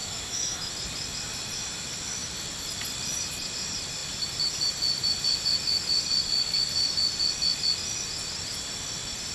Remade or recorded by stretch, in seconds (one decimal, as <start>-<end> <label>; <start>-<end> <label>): 0.0-0.7 remade; 0.7-9.3 recorded